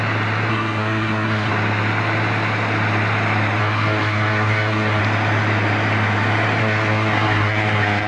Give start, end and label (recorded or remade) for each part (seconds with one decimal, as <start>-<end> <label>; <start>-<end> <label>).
0.0-0.5 recorded; 0.5-1.5 remade; 1.5-3.6 recorded; 3.6-5.0 remade; 5.0-6.6 recorded; 6.6-8.1 remade